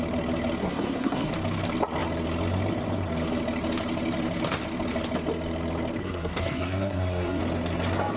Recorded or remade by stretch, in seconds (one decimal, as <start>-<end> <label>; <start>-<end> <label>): 0.0-0.6 recorded; 0.6-1.3 remade; 1.3-6.0 recorded; 6.0-7.4 remade; 7.4-8.2 recorded